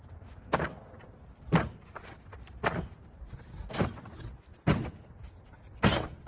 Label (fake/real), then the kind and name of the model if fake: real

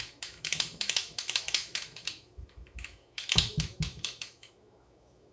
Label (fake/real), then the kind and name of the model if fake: fake, autoencoder, DAC-VAE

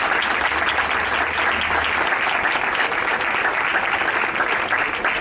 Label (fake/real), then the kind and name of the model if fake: real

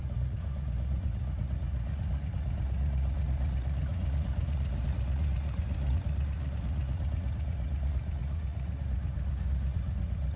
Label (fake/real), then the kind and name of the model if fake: fake, vocoder, Vocos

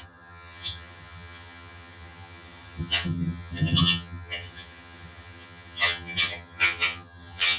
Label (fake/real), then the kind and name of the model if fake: fake, vocoder, HiFi-GAN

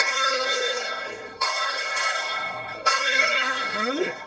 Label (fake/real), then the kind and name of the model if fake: fake, codec, SNAC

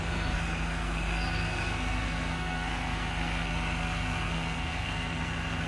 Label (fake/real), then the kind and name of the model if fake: fake, codec, SNAC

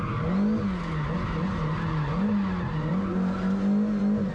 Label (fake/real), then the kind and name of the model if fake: real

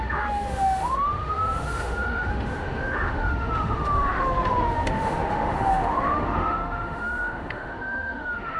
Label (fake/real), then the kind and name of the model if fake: fake, autoencoder, DAC-VAE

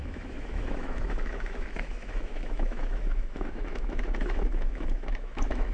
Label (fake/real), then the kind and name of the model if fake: fake, autoencoder, DAC-VAE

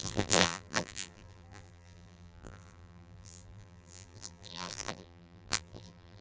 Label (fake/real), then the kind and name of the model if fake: fake, vocoder, BigVGAN v2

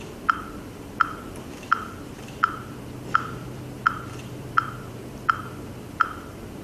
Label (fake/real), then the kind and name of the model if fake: fake, vocoder, BigVGAN v2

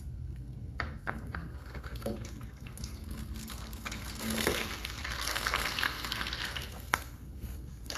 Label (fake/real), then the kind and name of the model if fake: fake, codec, SNAC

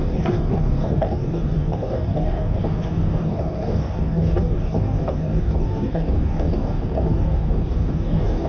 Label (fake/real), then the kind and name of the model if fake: fake, codec, DAC